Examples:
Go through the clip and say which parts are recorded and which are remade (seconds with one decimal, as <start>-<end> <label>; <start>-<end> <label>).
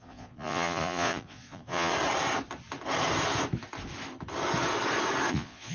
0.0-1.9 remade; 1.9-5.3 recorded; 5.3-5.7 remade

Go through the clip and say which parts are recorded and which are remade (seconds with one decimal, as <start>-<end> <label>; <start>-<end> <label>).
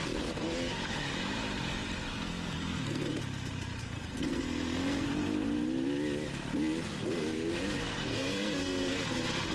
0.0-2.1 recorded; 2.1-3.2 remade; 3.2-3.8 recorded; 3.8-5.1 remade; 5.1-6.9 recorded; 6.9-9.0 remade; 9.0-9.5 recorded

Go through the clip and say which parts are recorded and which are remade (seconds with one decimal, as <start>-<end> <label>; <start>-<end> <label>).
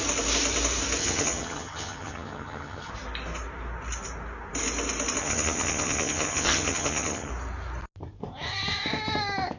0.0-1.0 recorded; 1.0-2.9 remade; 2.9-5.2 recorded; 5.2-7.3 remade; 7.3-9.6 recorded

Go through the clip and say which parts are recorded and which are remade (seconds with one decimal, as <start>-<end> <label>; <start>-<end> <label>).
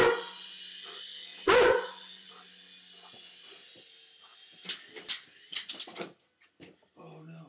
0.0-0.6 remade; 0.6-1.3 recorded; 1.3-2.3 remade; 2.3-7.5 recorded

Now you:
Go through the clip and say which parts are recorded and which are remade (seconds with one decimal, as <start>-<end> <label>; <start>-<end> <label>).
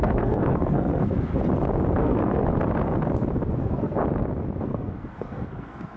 0.0-1.3 remade; 1.3-2.0 recorded; 2.0-2.4 remade; 2.4-3.6 recorded; 3.6-4.0 remade; 4.0-4.6 recorded; 4.6-6.0 remade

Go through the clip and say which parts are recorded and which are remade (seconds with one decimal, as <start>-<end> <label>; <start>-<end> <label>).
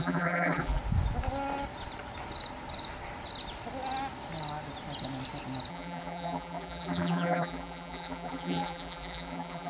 0.0-0.8 remade; 0.8-5.7 recorded; 5.7-9.7 remade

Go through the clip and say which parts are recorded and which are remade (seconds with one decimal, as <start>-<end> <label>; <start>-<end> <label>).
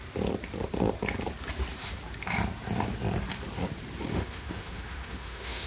0.0-4.1 recorded; 4.1-5.7 remade